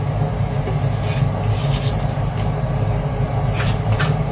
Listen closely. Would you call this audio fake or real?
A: real